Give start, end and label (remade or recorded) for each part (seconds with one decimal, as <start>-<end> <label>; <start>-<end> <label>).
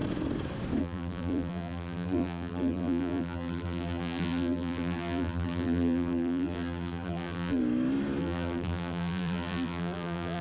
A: 0.0-0.8 recorded; 0.8-7.6 remade; 7.6-8.2 recorded; 8.2-10.4 remade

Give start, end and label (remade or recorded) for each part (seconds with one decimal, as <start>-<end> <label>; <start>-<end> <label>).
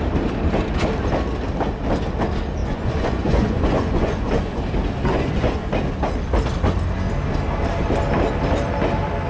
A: 0.0-2.6 recorded; 2.6-4.6 remade; 4.6-5.1 recorded; 5.1-5.7 remade; 5.7-9.3 recorded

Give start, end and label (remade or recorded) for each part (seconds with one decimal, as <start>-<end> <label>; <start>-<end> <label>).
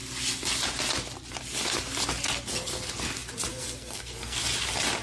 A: 0.0-3.5 recorded; 3.5-4.4 remade; 4.4-5.0 recorded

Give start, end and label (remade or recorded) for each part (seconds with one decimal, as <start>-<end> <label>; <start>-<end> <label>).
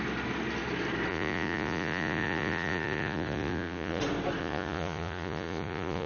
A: 0.0-1.1 recorded; 1.1-4.0 remade; 4.0-4.4 recorded; 4.4-6.1 remade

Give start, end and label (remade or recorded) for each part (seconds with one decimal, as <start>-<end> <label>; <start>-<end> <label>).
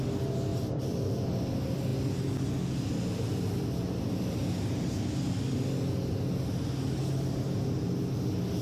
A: 0.0-0.5 recorded; 0.5-1.0 remade; 1.0-8.6 recorded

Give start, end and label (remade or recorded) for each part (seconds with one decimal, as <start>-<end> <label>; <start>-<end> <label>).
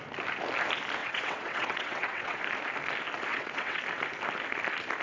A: 0.0-1.0 recorded; 1.0-2.4 remade; 2.4-3.3 recorded; 3.3-3.8 remade; 3.8-5.0 recorded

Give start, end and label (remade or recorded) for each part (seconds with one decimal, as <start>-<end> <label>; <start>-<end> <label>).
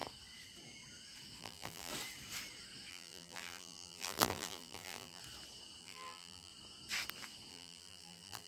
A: 0.0-1.4 recorded; 1.4-1.9 remade; 1.9-2.9 recorded; 2.9-5.2 remade; 5.2-5.8 recorded; 5.8-6.5 remade; 6.5-7.5 recorded; 7.5-8.5 remade